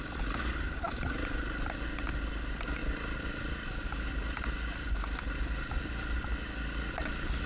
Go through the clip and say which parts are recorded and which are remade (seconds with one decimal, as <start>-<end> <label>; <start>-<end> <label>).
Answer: 0.0-2.8 recorded; 2.8-3.9 remade; 3.9-7.5 recorded

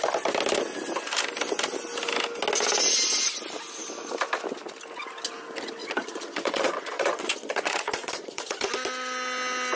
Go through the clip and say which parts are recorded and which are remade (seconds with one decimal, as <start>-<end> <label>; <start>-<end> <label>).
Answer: 0.0-5.8 recorded; 5.8-8.7 remade; 8.7-9.8 recorded

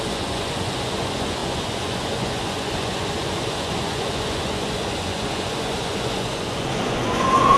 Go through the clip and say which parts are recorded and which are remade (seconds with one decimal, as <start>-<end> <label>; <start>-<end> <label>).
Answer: 0.0-7.6 remade

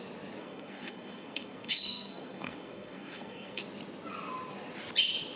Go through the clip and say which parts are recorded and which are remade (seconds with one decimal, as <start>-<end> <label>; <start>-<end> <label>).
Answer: 0.0-0.4 recorded; 0.4-3.6 remade; 3.6-5.4 recorded

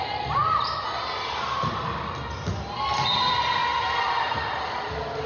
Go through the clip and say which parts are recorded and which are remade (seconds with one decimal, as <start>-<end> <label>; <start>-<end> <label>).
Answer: 0.0-5.3 recorded

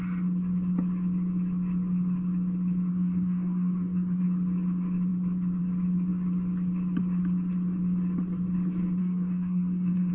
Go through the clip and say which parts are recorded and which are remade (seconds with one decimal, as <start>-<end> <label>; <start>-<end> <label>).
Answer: 0.0-2.9 recorded; 2.9-4.2 remade; 4.2-9.0 recorded; 9.0-10.1 remade

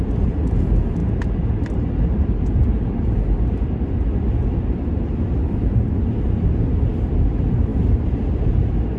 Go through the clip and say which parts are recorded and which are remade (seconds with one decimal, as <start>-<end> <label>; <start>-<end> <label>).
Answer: 0.0-9.0 recorded